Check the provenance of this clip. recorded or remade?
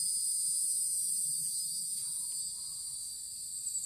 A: recorded